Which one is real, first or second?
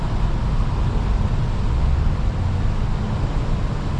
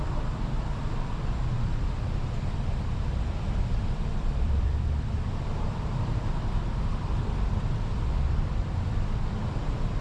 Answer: first